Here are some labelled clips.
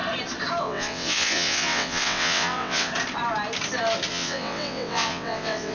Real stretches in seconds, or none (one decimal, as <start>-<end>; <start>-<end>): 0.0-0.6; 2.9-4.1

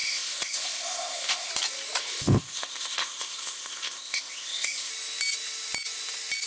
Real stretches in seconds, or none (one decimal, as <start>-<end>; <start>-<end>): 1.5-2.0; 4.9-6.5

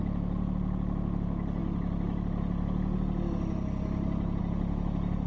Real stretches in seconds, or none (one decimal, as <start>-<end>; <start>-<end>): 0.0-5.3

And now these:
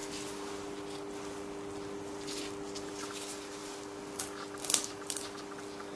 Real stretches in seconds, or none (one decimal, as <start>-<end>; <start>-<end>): 0.0-5.9

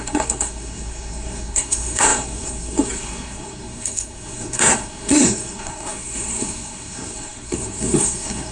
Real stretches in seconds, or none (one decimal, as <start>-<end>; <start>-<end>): none

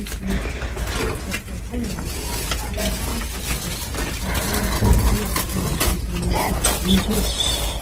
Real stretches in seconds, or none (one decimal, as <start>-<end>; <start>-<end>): 0.0-7.8